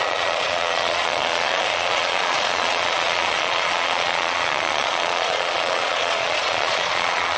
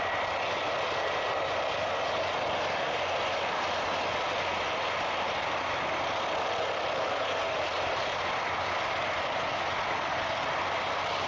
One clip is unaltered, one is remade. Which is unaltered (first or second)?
second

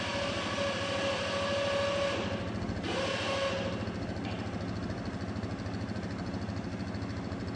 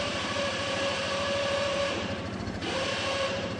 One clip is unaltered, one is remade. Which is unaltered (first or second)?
first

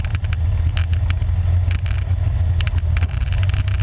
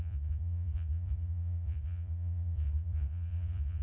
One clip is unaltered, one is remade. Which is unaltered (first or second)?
first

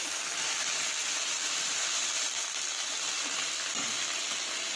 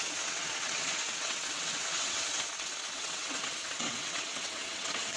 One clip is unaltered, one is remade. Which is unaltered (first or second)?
first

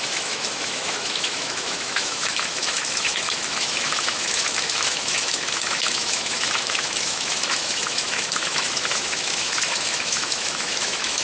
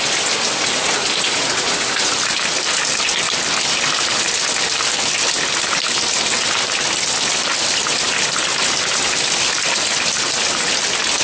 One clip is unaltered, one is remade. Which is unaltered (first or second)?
second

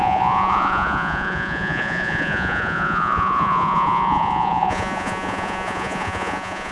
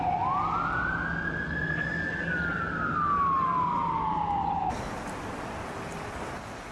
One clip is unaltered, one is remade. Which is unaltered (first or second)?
second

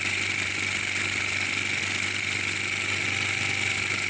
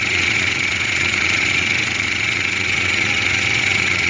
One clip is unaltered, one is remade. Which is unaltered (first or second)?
first